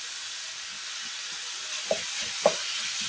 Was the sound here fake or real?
real